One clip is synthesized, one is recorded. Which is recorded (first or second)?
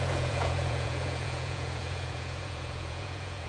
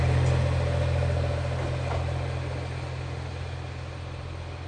second